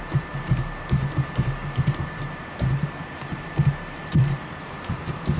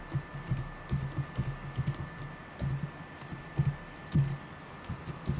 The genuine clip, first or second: second